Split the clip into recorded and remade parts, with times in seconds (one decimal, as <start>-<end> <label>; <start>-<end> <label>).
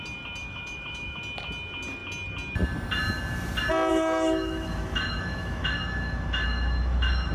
0.0-0.4 recorded; 0.4-1.2 remade; 1.2-3.9 recorded; 3.9-7.3 remade